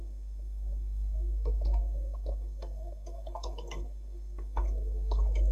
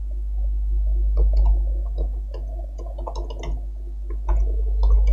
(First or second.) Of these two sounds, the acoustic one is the second